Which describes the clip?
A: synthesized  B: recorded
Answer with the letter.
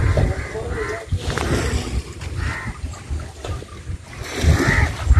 B